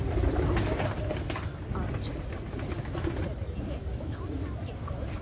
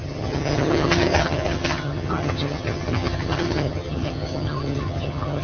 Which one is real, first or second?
first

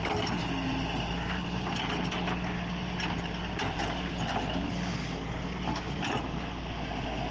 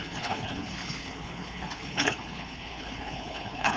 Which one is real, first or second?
first